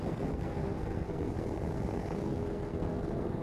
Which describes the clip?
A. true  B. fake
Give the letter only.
B